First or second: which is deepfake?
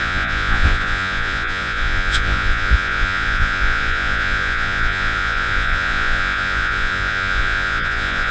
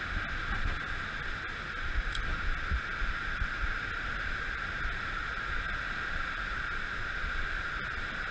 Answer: first